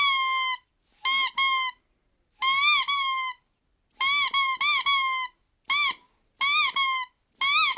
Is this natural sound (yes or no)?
yes